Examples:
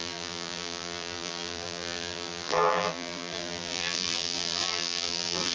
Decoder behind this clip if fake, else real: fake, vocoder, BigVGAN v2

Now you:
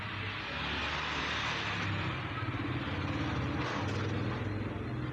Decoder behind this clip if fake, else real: real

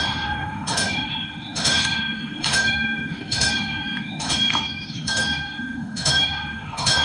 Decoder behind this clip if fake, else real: fake, autoencoder, DAC-VAE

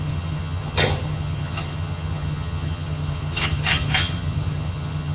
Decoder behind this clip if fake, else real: fake, vocoder, HiFi-GAN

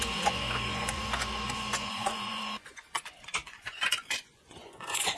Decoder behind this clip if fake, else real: fake, vocoder, Vocos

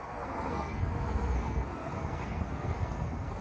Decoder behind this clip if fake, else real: fake, codec, SNAC